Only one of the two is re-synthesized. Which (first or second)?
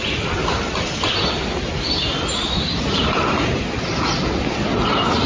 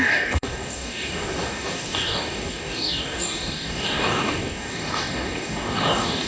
second